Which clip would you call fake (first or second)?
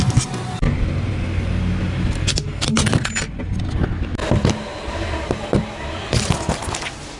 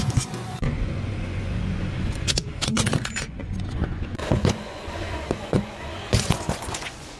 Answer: second